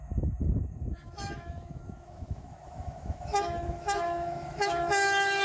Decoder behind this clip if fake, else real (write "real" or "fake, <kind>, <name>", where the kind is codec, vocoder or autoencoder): fake, autoencoder, DAC-VAE